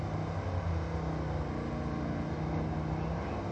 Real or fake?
real